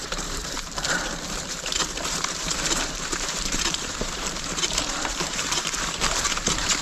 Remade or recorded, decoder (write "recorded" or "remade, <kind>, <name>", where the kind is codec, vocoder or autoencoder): remade, vocoder, BigVGAN v2